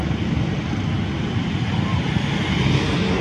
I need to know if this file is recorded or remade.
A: recorded